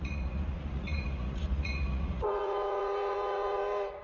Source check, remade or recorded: remade